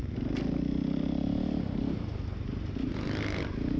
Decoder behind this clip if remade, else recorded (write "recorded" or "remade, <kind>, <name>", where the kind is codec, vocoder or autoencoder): recorded